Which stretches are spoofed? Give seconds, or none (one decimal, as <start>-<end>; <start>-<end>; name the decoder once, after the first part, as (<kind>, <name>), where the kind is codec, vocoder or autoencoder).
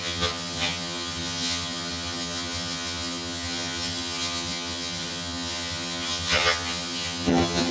0.0-7.7 (vocoder, HiFi-GAN)